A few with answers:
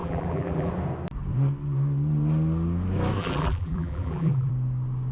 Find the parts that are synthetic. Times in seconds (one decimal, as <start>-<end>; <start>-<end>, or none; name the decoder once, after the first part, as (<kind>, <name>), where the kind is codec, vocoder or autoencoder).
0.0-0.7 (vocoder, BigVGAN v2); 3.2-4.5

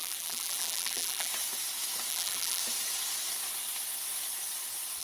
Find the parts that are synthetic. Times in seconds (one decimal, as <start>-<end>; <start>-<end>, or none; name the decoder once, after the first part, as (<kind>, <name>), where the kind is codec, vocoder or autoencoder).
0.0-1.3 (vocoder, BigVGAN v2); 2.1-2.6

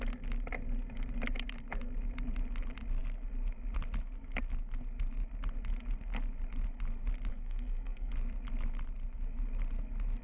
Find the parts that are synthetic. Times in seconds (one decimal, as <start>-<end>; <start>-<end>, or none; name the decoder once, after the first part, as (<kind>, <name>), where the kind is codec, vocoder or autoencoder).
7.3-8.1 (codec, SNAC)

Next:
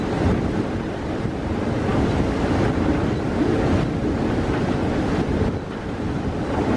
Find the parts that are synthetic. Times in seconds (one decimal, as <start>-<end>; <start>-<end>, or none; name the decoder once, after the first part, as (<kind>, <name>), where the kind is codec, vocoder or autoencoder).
none

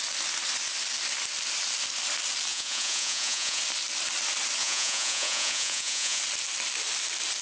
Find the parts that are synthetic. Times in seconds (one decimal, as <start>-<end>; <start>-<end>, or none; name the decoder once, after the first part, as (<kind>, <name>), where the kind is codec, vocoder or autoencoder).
2.5-3.6 (vocoder, Vocos); 4.6-6.2

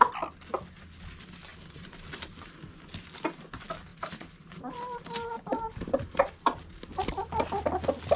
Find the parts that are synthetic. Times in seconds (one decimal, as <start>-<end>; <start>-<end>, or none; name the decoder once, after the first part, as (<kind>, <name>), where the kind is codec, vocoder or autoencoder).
1.5-2.6 (vocoder, BigVGAN v2); 3.9-6.6

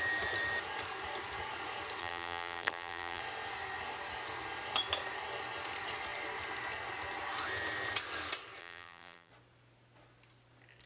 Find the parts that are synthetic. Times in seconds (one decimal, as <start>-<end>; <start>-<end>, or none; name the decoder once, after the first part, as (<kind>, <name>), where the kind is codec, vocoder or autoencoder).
2.0-3.2 (vocoder, BigVGAN v2); 8.6-9.3